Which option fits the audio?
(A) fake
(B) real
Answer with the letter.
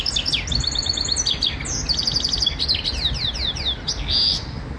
B